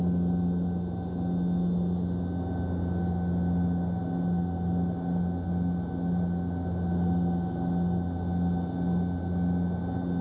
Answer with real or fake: real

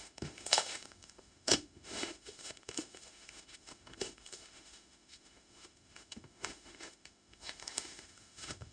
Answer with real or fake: fake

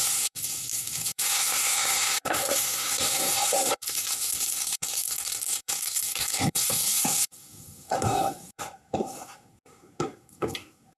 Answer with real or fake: fake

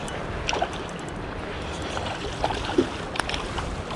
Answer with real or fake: real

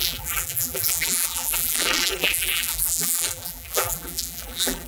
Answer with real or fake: fake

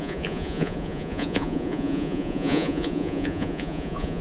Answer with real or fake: fake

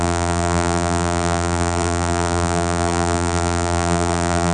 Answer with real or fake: fake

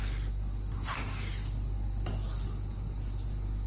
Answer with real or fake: real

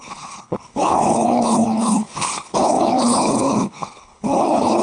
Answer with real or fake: fake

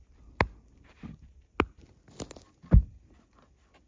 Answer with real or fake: real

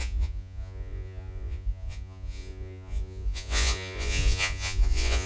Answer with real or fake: fake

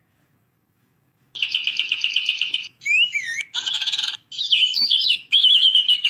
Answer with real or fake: fake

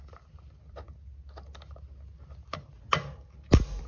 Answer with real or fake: real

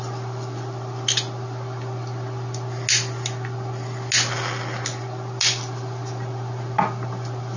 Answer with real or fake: real